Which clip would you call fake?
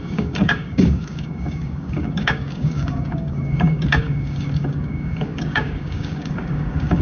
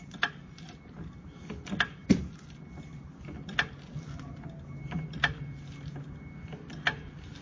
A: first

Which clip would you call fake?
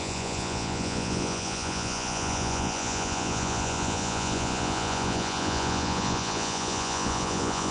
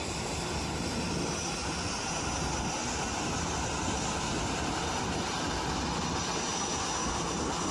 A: first